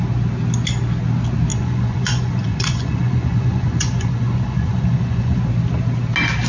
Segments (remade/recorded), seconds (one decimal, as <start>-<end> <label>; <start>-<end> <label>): 0.0-1.5 recorded; 1.5-5.4 remade; 5.4-6.5 recorded